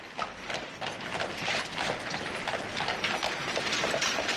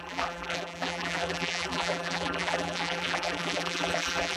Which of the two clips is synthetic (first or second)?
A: second